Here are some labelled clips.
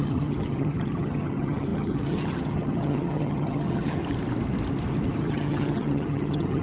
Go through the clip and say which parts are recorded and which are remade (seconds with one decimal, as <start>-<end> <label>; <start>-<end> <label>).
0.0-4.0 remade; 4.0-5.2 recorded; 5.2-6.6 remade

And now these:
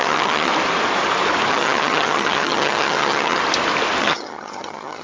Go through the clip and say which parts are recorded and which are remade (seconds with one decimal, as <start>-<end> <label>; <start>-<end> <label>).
0.0-0.5 remade; 0.5-1.5 recorded; 1.5-3.4 remade; 3.4-4.0 recorded; 4.0-5.0 remade

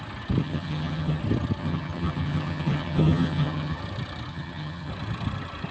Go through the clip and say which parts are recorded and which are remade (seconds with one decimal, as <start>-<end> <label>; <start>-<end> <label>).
0.0-0.4 recorded; 0.4-1.2 remade; 1.2-1.6 recorded; 1.6-3.8 remade; 3.8-4.3 recorded; 4.3-4.9 remade; 4.9-5.7 recorded